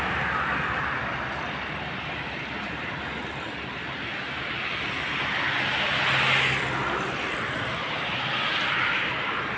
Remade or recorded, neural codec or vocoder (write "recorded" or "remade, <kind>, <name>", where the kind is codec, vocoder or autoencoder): recorded